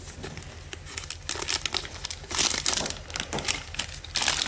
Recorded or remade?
recorded